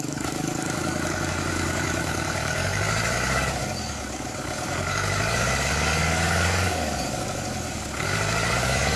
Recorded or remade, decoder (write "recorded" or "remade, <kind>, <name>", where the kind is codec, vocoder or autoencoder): remade, codec, DAC